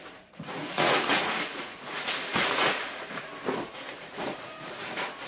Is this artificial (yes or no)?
yes